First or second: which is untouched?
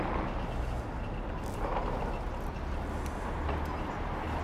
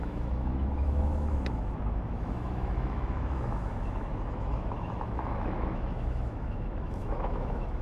first